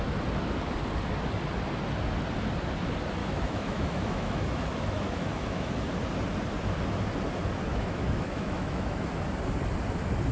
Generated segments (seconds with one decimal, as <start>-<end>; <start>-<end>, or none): 3.2-5.8; 7.7-9.2